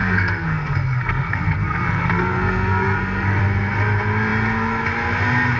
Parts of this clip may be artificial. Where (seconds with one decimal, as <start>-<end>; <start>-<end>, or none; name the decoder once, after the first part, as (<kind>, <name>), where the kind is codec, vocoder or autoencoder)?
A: 0.0-3.4 (codec, SNAC)